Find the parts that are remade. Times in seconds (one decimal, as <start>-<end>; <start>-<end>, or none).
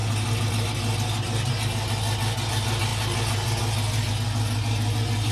none